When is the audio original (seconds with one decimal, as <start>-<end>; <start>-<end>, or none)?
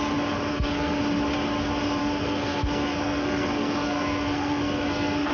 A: 0.0-0.5; 1.0-2.0